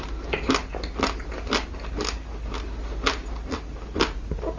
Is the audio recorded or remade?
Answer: recorded